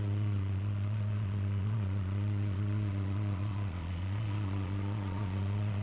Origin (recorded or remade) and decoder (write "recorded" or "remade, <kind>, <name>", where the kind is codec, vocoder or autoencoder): remade, vocoder, Vocos